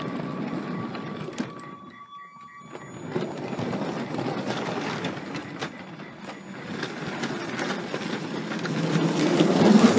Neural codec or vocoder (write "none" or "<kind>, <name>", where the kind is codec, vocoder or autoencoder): none